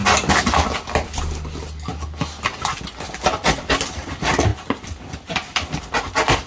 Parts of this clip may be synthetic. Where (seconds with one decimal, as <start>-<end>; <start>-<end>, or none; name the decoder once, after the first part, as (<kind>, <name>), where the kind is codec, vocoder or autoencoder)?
none